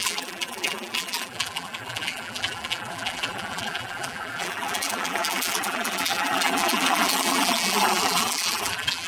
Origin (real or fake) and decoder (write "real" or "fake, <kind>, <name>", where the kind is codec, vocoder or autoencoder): fake, vocoder, BigVGAN v2